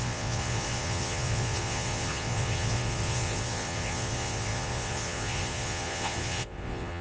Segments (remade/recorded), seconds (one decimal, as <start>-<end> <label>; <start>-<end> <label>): 0.0-7.0 remade